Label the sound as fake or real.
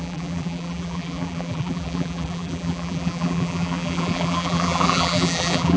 fake